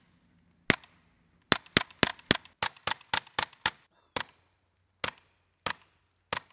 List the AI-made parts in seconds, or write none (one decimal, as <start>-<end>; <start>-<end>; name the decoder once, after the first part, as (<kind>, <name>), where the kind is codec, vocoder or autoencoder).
none